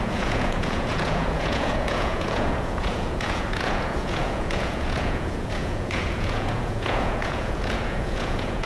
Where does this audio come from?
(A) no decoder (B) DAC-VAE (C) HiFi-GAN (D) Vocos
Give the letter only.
D